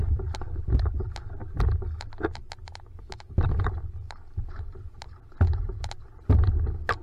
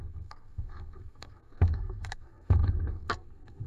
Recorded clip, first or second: first